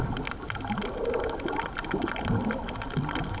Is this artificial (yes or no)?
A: no